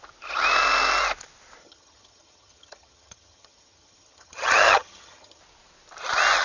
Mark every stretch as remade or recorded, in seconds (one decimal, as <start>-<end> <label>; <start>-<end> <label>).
0.0-1.6 recorded; 1.6-5.4 remade; 5.4-6.4 recorded